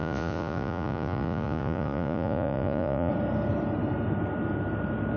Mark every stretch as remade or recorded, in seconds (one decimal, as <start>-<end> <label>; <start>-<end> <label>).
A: 0.0-3.1 remade; 3.1-5.2 recorded